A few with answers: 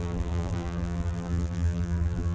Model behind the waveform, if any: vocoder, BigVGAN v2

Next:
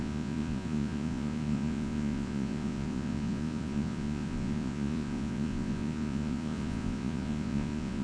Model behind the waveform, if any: vocoder, Vocos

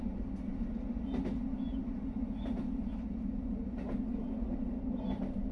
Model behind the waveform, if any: none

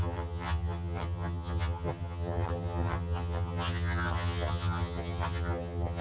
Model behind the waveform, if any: vocoder, HiFi-GAN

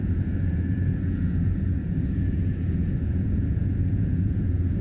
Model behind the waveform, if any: vocoder, Vocos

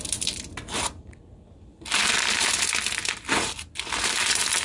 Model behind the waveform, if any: none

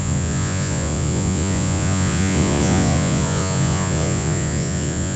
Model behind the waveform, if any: vocoder, Vocos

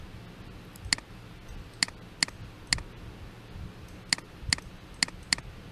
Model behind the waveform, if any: none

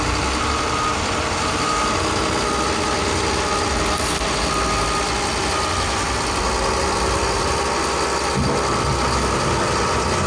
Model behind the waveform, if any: none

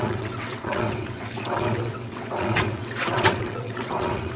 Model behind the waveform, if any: vocoder, WaveNeXt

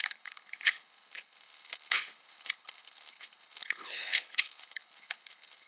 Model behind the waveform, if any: codec, HILCodec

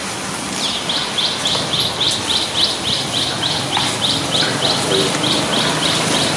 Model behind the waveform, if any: none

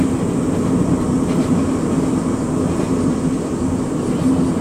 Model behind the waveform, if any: none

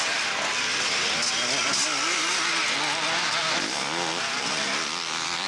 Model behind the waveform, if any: none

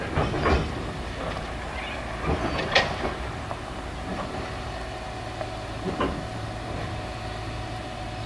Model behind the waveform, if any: none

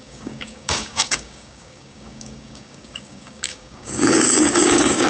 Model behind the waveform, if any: codec, DAC